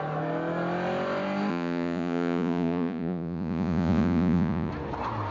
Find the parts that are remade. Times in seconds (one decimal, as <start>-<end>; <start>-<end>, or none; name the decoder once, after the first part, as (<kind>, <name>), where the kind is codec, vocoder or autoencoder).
1.5-4.7 (vocoder, Vocos)